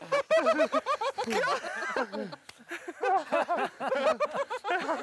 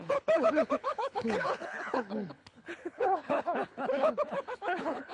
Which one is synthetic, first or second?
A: second